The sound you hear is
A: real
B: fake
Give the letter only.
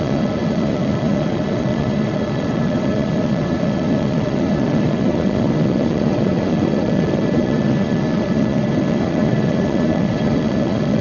B